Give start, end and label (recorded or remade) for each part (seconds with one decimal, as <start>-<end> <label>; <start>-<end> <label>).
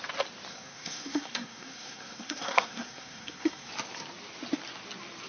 0.0-0.5 recorded; 0.5-3.7 remade; 3.7-5.3 recorded